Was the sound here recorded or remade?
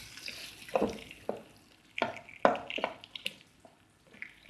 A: recorded